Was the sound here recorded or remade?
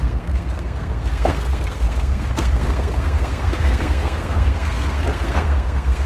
remade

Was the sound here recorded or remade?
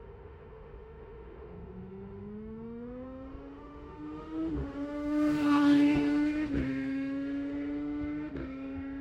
remade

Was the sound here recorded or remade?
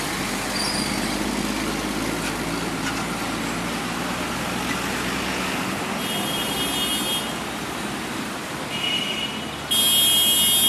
recorded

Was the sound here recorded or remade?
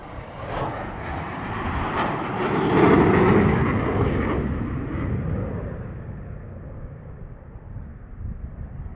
recorded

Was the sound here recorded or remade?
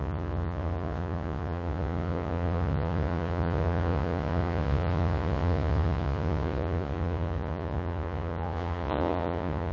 remade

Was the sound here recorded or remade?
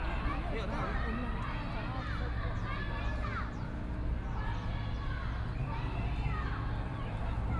recorded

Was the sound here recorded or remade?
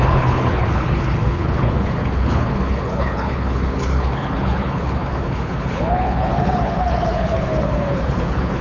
remade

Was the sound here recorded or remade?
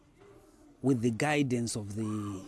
recorded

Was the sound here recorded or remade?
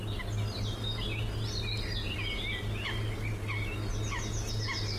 recorded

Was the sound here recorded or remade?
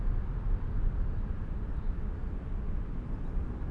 recorded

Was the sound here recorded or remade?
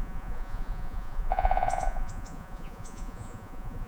remade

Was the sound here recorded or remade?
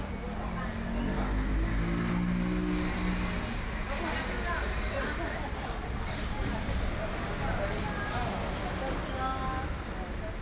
recorded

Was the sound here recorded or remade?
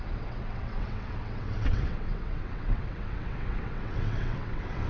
remade